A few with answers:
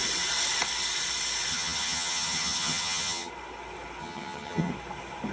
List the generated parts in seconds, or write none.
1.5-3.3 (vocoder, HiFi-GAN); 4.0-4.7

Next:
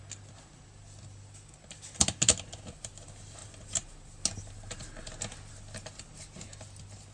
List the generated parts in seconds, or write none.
none

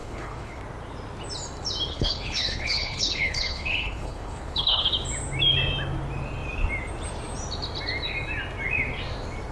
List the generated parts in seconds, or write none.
0.0-0.6 (codec, HILCodec); 1.9-4.9

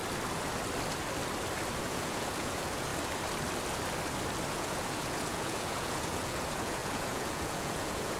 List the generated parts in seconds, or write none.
1.8-2.9 (vocoder, Vocos); 4.5-8.2